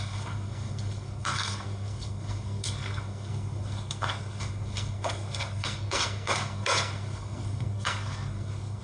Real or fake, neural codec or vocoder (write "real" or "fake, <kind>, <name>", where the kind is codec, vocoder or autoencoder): fake, codec, SNAC